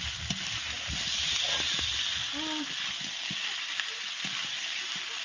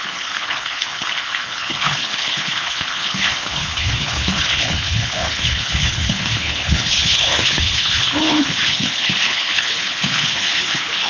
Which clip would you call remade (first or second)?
second